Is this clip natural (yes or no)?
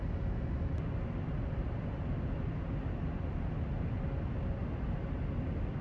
yes